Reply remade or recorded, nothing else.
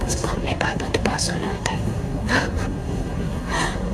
remade